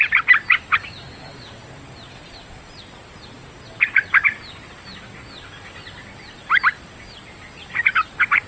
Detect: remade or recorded recorded